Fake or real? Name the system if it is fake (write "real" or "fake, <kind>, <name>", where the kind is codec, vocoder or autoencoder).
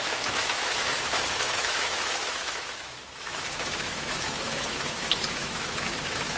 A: fake, autoencoder, DAC-VAE